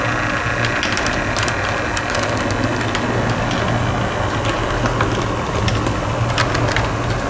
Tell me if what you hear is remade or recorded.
recorded